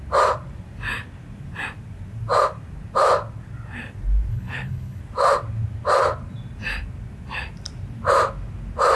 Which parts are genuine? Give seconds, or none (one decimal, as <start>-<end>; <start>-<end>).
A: 0.0-4.3; 5.0-9.0